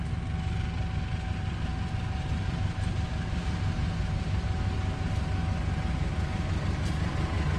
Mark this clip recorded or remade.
recorded